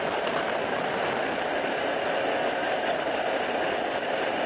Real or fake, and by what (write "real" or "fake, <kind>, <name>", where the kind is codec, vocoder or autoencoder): real